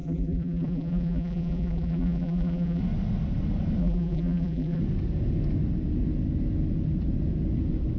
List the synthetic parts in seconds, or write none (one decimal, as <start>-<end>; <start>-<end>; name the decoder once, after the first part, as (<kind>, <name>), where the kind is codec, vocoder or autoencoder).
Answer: 0.0-2.8 (vocoder, BigVGAN v2); 3.8-4.8